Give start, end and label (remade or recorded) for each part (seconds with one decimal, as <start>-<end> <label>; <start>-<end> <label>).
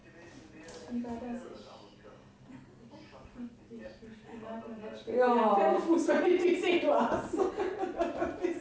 0.0-8.6 recorded